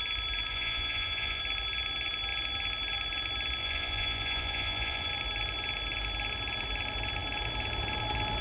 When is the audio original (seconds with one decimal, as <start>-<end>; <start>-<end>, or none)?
0.0-0.5; 1.4-3.6; 5.1-8.4